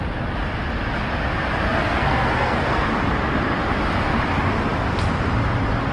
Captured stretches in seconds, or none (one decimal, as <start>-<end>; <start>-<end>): 0.0-1.7; 2.9-5.9